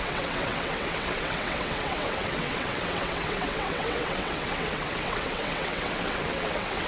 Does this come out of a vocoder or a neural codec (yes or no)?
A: yes